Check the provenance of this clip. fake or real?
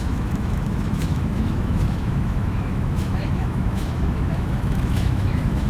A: fake